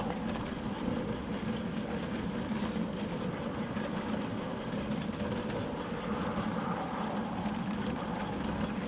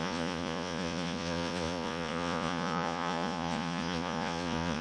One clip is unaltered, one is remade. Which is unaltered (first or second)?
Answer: first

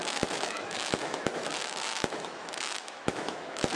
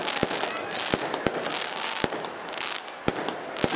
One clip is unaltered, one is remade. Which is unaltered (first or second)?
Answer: second